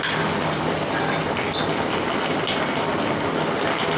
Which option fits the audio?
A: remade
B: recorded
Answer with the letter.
B